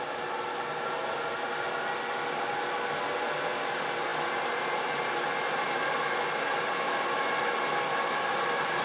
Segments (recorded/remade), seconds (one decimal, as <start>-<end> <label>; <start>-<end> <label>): 0.0-8.8 recorded